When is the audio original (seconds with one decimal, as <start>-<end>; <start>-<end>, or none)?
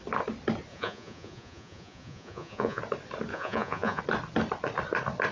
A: 0.0-0.7; 2.8-3.3; 4.0-5.3